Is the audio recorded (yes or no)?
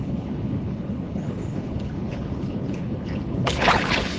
no